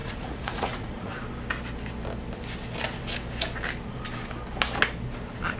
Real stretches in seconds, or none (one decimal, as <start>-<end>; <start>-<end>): 1.1-5.6